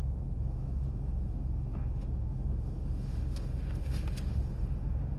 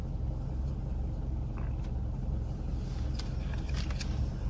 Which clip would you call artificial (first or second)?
first